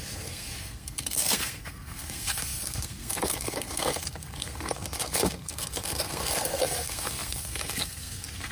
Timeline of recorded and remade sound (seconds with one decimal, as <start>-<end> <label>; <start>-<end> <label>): 0.0-8.5 remade